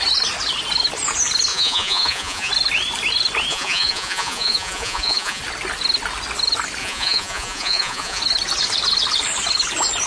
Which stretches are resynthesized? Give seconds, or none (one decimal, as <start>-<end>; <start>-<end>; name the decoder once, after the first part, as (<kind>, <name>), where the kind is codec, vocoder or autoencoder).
1.5-2.5 (vocoder, Vocos); 3.5-5.4; 6.8-8.2